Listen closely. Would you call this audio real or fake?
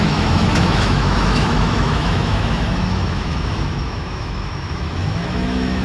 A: fake